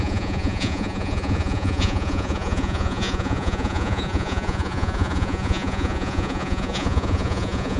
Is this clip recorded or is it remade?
remade